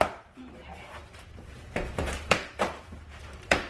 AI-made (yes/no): yes